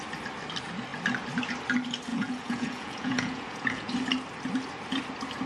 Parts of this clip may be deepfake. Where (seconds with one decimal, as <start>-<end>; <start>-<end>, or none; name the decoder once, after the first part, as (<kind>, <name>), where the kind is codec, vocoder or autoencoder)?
2.1-3.9 (vocoder, Vocos)